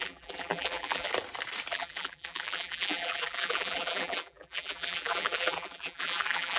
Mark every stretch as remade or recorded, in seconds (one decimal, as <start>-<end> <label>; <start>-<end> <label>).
0.0-1.1 remade; 1.1-1.7 recorded; 1.7-6.6 remade